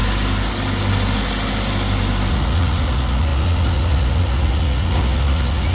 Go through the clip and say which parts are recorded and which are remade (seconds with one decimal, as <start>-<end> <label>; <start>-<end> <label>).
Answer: 0.0-2.3 recorded; 2.3-5.7 remade